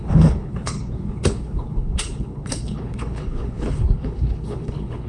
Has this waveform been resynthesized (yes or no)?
yes